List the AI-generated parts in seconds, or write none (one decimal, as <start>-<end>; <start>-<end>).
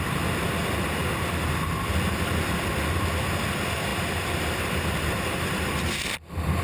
3.9-6.0